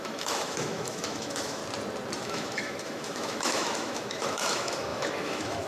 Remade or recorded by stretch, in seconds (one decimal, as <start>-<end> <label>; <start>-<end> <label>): 0.0-1.6 remade; 1.6-2.2 recorded; 2.2-5.7 remade